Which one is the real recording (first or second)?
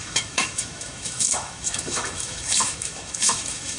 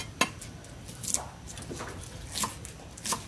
second